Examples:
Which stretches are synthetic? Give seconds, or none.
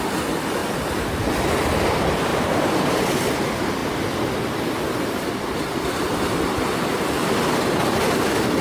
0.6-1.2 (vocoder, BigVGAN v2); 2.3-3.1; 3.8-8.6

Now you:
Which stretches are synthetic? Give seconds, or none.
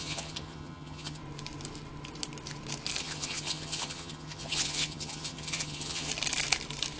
0.0-1.2 (vocoder, HiFi-GAN); 3.0-6.1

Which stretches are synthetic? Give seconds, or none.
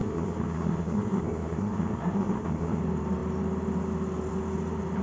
0.0-2.8 (codec, SNAC)